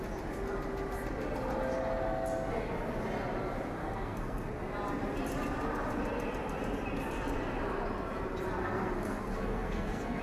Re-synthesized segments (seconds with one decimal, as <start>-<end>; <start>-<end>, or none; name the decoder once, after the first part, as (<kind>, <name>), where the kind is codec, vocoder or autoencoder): 3.8-4.5 (codec, SNAC); 8.6-10.2